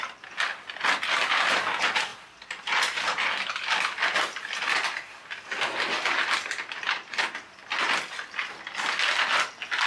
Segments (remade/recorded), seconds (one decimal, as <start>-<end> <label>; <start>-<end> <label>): 0.0-9.9 recorded